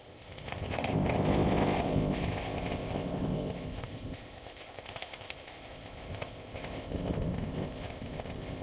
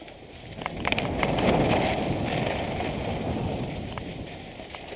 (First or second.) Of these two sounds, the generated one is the first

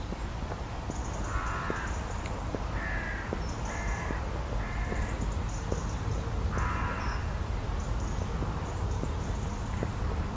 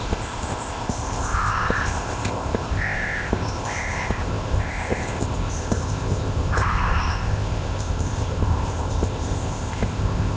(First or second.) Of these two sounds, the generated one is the second